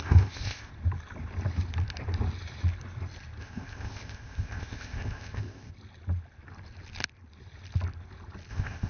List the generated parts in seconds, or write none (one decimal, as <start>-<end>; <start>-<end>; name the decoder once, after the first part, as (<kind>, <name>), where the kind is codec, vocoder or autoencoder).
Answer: 0.0-0.7 (codec, ZipCodec); 3.4-5.7; 8.5-8.9